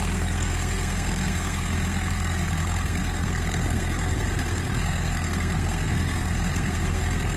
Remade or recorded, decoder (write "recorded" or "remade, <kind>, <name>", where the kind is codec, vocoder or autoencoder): remade, codec, SNAC